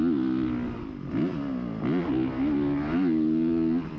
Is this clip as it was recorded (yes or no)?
yes